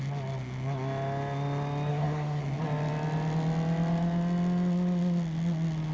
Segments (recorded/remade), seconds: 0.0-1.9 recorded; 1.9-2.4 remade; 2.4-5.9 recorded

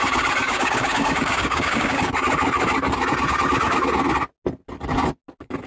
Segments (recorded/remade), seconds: 0.0-0.4 recorded; 0.4-2.1 remade; 2.1-5.7 recorded